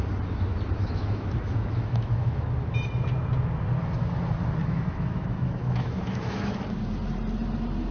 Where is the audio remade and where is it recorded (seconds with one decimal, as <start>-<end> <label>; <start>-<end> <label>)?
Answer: 0.0-0.8 recorded; 0.8-2.5 remade; 2.5-4.6 recorded; 4.6-6.6 remade; 6.6-7.9 recorded